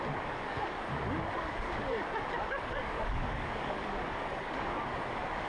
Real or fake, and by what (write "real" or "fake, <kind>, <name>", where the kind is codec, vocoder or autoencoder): fake, codec, DAC